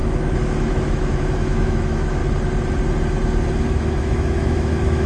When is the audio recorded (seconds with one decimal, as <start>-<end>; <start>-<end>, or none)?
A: 2.2-3.8